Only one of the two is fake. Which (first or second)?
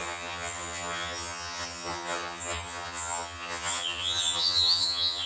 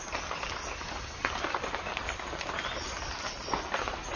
first